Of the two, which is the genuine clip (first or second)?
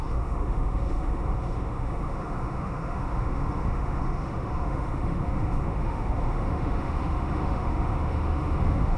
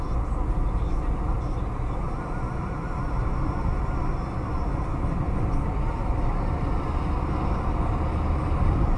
second